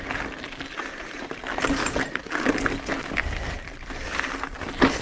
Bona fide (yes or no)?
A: yes